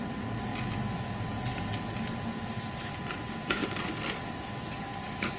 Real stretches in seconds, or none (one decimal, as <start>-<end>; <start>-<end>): 0.5-3.0; 3.6-4.2